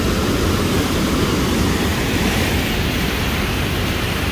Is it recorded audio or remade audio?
recorded